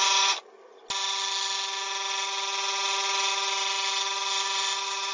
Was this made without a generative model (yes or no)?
yes